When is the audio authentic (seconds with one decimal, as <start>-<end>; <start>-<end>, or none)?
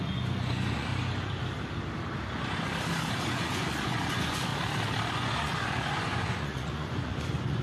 0.9-3.1; 4.5-5.1